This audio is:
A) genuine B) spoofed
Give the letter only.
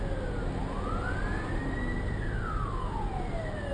A